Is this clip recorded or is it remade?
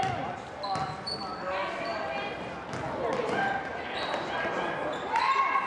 recorded